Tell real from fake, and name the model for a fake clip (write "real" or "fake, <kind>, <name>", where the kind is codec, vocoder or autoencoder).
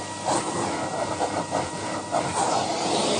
real